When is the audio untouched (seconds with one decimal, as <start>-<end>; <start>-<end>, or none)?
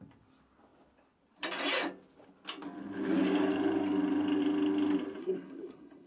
0.0-5.2